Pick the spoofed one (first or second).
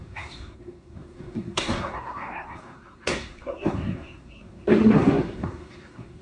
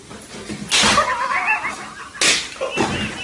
first